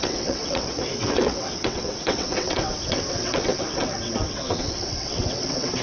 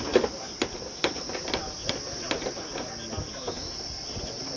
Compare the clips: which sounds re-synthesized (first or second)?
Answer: first